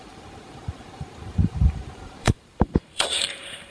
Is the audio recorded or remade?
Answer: remade